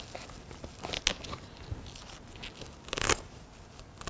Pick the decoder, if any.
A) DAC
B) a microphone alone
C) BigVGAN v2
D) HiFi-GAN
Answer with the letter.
B